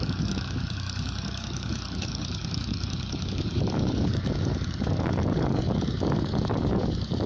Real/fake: fake